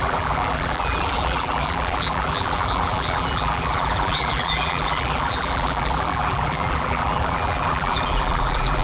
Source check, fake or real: fake